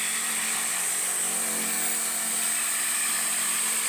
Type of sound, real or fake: real